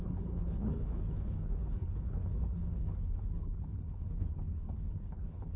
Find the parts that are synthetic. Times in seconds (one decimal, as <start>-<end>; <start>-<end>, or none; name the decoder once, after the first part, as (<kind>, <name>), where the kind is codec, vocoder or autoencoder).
0.0-5.6 (codec, HILCodec)